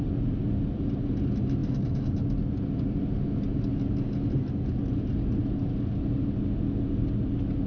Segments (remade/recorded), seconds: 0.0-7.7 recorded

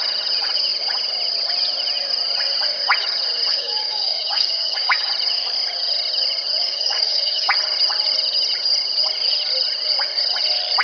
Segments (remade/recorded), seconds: 0.0-3.5 recorded; 3.5-5.1 remade; 5.1-6.6 recorded; 6.6-7.5 remade; 7.5-10.8 recorded

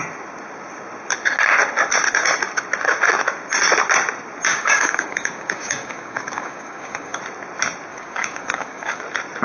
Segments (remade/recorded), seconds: 0.0-4.5 recorded; 4.5-7.2 remade; 7.2-7.9 recorded; 7.9-9.0 remade; 9.0-9.4 recorded